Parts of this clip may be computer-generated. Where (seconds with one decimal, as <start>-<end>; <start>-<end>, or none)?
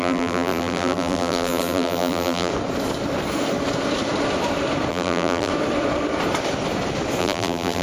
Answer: 0.0-2.5; 4.9-5.5; 7.2-7.8